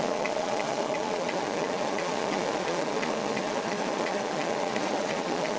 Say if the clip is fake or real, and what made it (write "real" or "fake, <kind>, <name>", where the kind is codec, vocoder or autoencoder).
fake, vocoder, Vocos